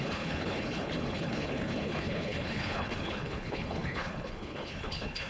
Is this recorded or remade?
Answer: remade